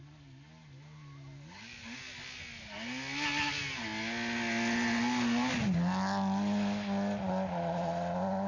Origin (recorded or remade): recorded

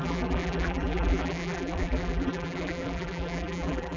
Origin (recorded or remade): remade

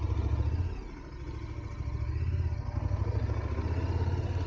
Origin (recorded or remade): recorded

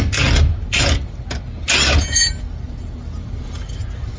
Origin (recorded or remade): recorded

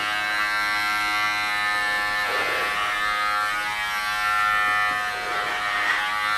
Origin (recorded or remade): recorded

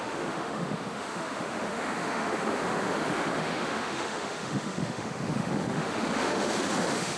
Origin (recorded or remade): remade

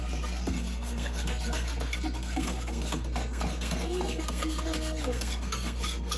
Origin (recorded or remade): remade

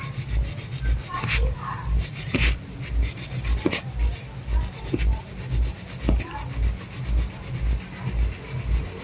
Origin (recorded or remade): recorded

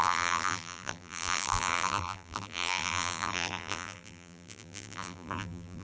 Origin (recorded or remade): remade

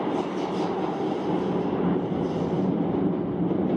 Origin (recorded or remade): recorded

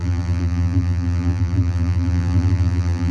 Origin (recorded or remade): remade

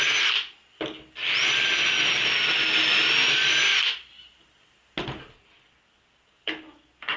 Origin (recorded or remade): recorded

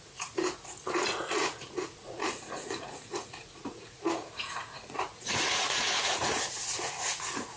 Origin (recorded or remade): remade